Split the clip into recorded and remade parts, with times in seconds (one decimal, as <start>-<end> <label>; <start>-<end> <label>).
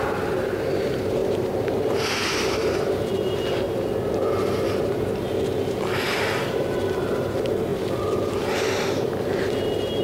0.0-1.2 recorded; 1.2-3.0 remade; 3.0-10.0 recorded